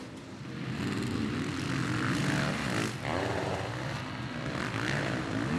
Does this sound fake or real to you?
real